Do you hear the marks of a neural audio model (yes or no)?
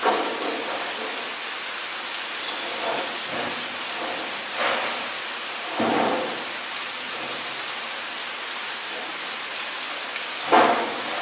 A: no